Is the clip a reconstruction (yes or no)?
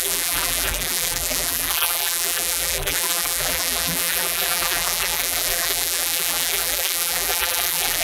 yes